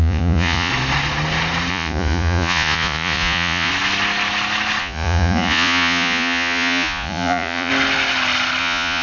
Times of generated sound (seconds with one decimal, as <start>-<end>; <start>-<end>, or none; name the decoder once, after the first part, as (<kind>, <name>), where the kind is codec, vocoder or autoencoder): 0.0-0.7 (vocoder, Vocos); 1.7-3.7; 4.8-7.7; 8.6-9.0